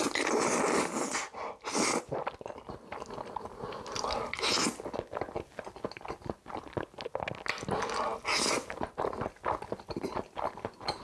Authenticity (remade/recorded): recorded